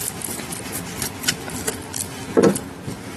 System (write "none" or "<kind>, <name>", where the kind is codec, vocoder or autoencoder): none